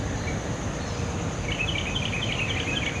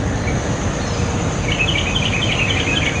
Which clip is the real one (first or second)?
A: second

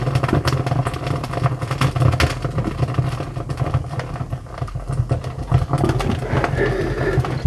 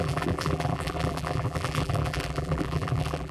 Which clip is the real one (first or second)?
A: first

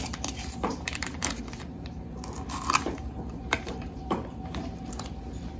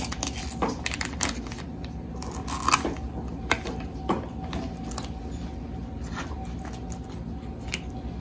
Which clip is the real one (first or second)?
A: second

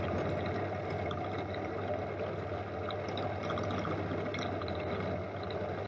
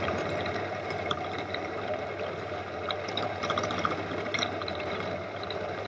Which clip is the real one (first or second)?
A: first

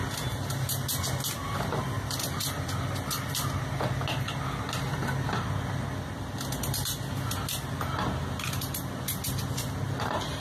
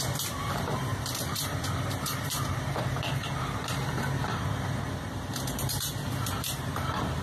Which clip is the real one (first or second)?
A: first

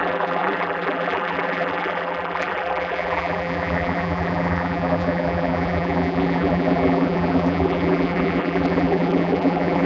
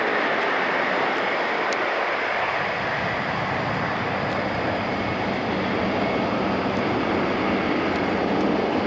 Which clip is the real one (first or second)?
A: second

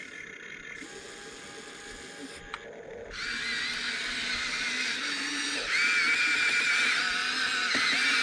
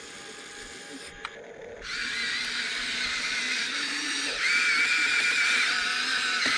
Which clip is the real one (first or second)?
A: first